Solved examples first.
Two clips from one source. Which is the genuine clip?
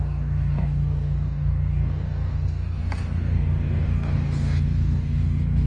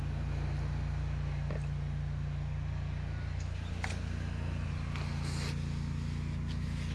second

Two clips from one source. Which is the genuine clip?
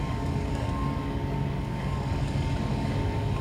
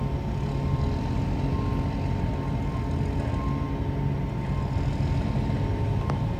second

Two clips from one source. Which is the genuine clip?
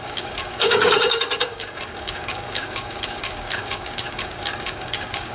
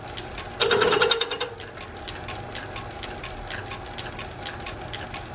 second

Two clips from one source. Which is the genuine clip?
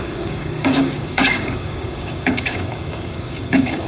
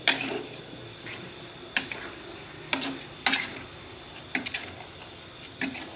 second